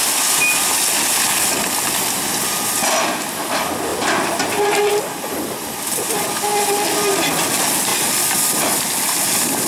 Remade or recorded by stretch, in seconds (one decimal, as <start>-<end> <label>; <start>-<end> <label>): 0.0-9.7 recorded